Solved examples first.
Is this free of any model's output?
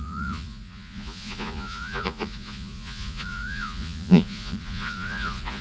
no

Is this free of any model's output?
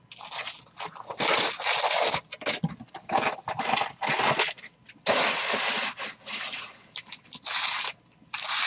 yes